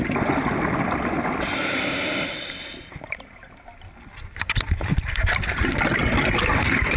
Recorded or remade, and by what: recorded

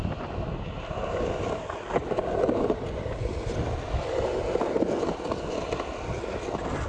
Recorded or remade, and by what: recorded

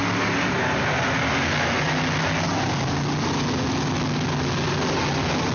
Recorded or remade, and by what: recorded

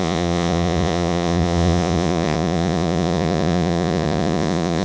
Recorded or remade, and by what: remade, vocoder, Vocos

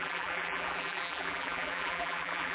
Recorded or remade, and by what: remade, vocoder, BigVGAN v2